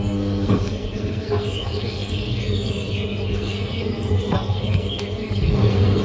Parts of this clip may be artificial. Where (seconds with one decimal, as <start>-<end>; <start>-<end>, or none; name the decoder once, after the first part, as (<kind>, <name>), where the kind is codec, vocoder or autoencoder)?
0.0-6.0 (codec, SNAC)